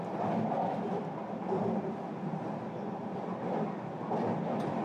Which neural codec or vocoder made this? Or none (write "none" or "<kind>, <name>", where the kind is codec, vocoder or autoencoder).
none